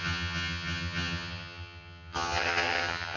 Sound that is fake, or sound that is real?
fake